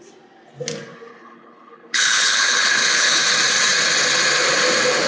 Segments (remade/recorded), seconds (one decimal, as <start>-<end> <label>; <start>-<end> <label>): 0.0-1.1 recorded; 1.1-3.2 remade; 3.2-5.1 recorded